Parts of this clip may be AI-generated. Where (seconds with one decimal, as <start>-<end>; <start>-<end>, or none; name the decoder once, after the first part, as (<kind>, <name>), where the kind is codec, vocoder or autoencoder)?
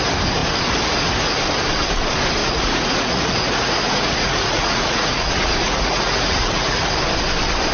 2.4-6.9 (vocoder, Vocos)